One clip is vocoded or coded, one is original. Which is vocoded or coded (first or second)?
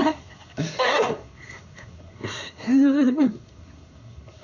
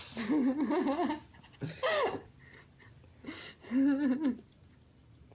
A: first